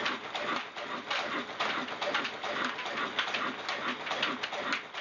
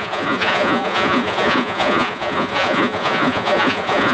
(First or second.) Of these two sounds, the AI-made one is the second